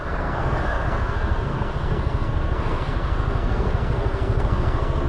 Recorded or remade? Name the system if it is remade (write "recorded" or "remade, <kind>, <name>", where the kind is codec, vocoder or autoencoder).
remade, codec, SNAC